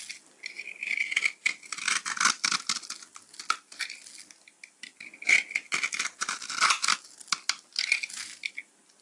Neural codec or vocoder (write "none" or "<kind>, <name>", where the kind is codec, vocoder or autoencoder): none